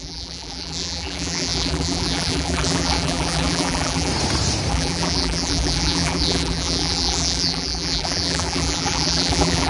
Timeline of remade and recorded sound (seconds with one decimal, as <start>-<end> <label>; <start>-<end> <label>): 0.0-4.1 remade; 4.1-4.7 recorded; 4.7-9.7 remade